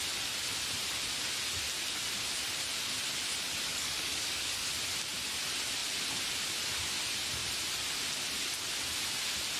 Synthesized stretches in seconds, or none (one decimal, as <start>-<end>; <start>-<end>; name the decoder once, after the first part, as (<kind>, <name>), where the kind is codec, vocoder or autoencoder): 3.7-4.6 (codec, DAC)